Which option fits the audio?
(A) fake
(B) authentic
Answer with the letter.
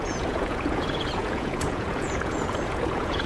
A